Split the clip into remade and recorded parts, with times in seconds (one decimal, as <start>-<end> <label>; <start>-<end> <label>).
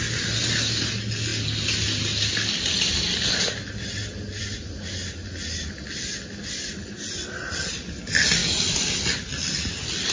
0.0-10.1 recorded